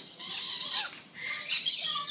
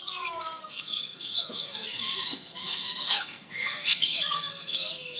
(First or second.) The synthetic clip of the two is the second